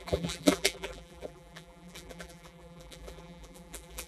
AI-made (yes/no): yes